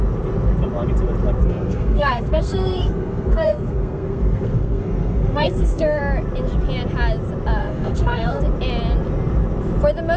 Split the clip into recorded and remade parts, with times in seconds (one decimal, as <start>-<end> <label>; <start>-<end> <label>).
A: 0.0-1.4 recorded; 1.4-6.0 remade; 6.0-7.6 recorded; 7.6-8.4 remade; 8.4-10.2 recorded